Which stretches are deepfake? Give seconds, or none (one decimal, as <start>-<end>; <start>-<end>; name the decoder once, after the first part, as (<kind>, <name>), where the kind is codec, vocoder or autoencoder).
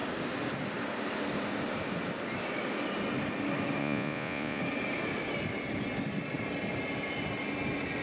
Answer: 3.8-4.6 (vocoder, Vocos)